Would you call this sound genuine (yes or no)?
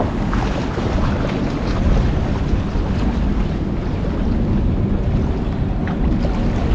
yes